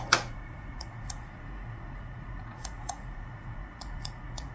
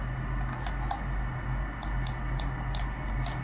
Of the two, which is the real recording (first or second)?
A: second